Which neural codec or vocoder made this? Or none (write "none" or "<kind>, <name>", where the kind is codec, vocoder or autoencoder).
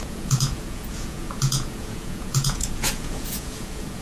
vocoder, Vocos